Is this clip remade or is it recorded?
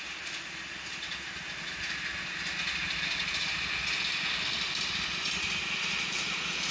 recorded